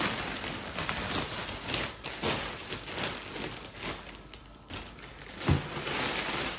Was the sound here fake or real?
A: real